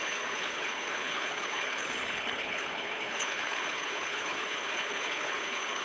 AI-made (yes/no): yes